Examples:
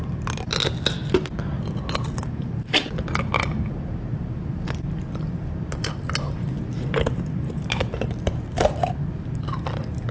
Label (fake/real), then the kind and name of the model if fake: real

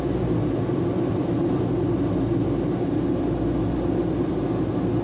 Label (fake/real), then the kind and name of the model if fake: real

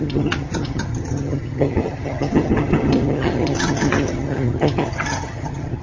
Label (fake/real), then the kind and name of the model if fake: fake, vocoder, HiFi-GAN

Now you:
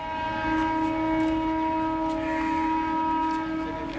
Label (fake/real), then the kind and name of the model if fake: real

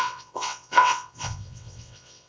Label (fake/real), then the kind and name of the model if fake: fake, vocoder, WaveNeXt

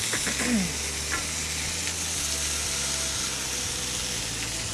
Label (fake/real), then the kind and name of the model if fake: real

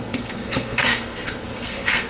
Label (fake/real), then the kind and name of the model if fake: fake, codec, SNAC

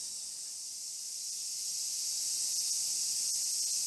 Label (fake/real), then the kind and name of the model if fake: real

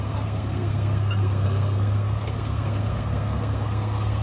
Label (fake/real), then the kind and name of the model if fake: fake, codec, SNAC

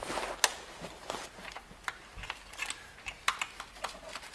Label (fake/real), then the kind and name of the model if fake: real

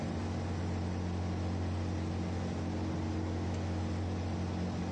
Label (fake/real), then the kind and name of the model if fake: real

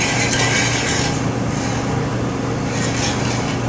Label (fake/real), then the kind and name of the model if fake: real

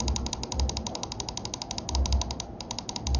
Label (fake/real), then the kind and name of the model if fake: real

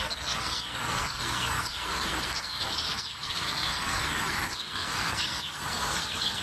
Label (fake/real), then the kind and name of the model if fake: fake, codec, SNAC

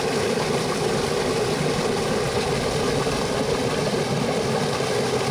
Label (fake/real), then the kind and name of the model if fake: real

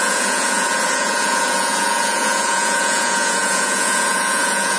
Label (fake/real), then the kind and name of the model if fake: fake, vocoder, Vocos